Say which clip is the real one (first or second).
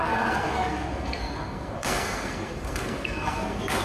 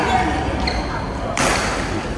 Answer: second